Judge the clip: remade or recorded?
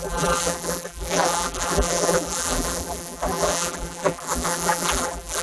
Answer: remade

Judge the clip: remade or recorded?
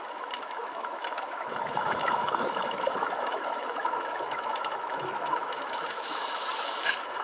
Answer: remade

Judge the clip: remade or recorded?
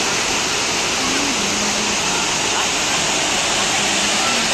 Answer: recorded